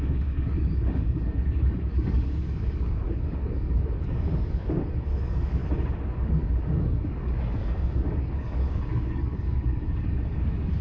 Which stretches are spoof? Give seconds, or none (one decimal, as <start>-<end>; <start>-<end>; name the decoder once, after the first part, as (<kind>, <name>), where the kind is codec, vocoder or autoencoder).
0.0-5.6 (codec, DAC); 6.1-10.8